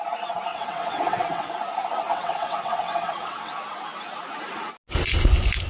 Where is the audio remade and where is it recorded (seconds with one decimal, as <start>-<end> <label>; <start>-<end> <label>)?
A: 0.0-0.5 recorded; 0.5-1.5 remade; 1.5-2.1 recorded; 2.1-3.5 remade; 3.5-5.7 recorded